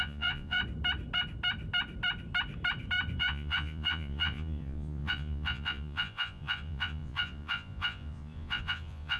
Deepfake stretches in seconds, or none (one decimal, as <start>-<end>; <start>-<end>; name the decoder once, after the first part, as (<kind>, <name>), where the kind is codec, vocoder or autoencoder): 0.0-0.6 (vocoder, Vocos); 3.2-9.2

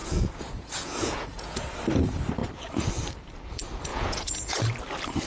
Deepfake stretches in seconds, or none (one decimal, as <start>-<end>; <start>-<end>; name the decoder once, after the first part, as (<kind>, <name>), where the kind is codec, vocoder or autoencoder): 0.0-1.6 (vocoder, Vocos); 3.9-4.6